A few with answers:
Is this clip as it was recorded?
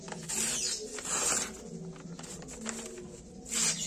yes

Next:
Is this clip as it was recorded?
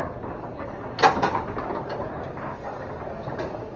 yes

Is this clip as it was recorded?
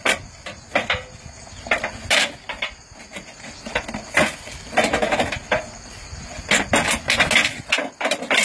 yes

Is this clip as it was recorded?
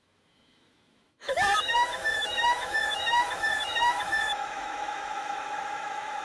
no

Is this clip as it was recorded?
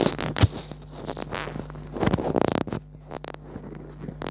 yes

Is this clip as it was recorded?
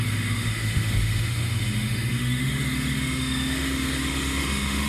no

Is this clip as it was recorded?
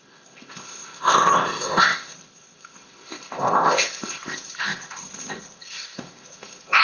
no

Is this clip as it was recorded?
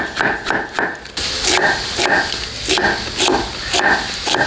yes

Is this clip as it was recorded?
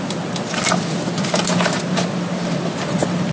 yes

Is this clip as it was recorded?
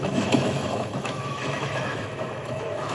no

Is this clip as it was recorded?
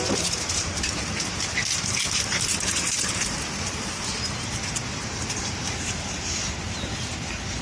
no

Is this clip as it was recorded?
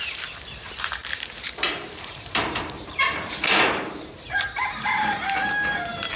no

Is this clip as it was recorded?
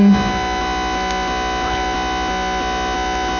yes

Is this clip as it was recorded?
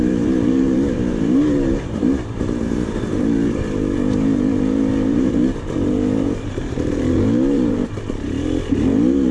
no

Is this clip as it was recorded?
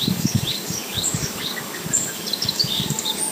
no